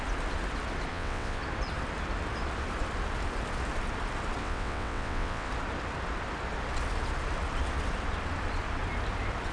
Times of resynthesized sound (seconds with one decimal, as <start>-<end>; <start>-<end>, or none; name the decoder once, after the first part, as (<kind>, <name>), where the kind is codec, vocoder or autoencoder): 0.9-1.4 (vocoder, WaveNeXt); 4.4-5.5